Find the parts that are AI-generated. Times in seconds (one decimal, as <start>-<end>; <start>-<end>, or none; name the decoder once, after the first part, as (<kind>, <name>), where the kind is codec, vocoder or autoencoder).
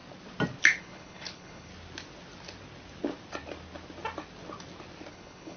0.8-1.7 (codec, HILCodec); 5.1-5.6